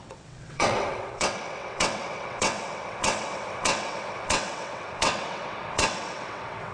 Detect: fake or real fake